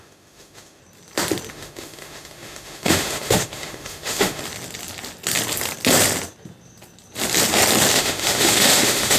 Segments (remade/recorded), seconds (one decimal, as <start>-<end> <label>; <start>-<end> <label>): 0.0-0.8 remade; 0.8-1.5 recorded; 1.5-4.4 remade; 4.4-7.9 recorded; 7.9-9.2 remade